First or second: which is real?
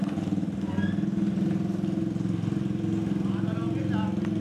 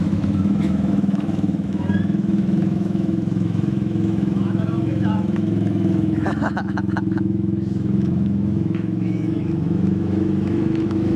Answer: first